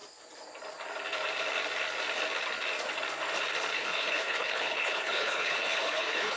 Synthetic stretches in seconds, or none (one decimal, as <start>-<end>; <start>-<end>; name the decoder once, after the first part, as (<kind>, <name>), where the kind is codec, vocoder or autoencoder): 3.7-6.4 (codec, HILCodec)